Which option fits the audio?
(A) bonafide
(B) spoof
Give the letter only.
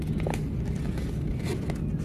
A